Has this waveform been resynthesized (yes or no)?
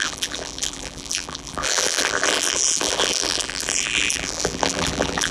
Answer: yes